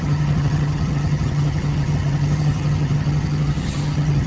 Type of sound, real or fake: fake